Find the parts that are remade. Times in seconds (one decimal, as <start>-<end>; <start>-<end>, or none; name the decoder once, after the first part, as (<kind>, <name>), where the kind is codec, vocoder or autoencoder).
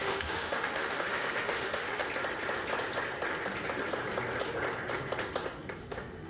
0.0-2.0 (autoencoder, DAC-VAE); 5.8-6.3